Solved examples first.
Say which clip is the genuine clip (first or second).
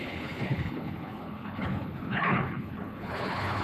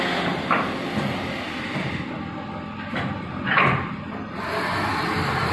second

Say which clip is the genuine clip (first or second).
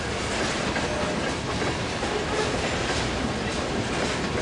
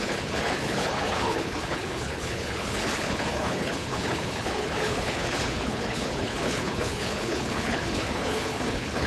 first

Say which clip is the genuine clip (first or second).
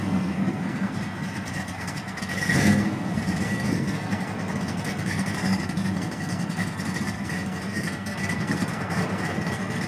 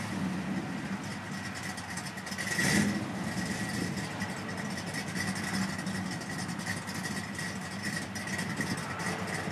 second